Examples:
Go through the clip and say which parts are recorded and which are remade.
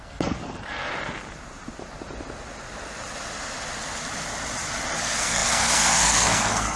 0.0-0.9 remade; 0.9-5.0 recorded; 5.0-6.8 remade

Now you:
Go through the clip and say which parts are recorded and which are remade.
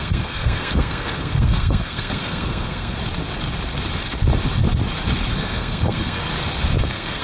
0.0-3.0 remade; 3.0-5.3 recorded; 5.3-6.3 remade; 6.3-6.8 recorded; 6.8-7.2 remade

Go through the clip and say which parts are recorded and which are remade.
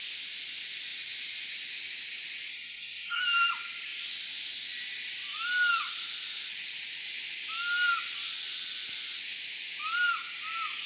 0.0-2.5 recorded; 2.5-3.2 remade; 3.2-10.9 recorded